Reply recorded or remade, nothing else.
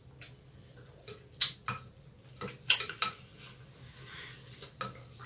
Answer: recorded